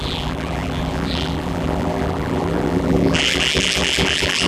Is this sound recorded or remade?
remade